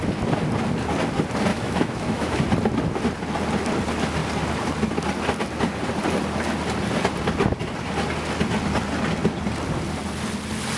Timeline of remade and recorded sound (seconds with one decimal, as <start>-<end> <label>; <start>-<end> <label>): 0.0-1.5 recorded; 1.5-2.4 remade; 2.4-10.8 recorded